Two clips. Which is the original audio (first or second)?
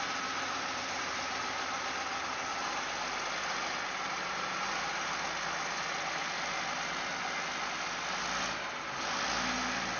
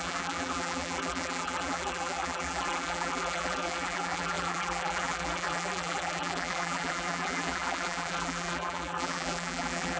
first